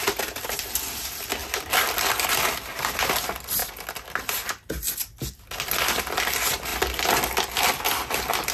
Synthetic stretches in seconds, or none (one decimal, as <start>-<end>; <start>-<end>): none